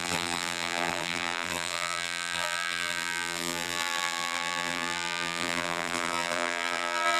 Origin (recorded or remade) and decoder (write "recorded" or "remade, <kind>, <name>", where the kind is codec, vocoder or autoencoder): remade, vocoder, BigVGAN v2